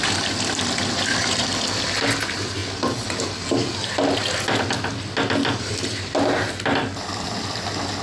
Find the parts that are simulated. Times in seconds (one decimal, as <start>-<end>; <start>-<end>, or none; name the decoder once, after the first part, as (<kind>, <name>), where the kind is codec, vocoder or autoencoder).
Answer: none